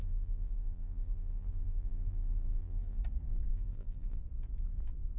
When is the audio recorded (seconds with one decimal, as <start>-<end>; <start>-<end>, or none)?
3.0-3.5; 4.2-5.2